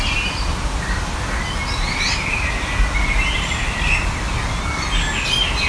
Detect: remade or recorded recorded